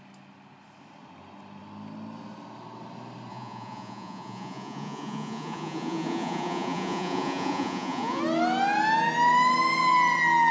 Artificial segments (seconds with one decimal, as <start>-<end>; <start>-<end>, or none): 3.3-8.2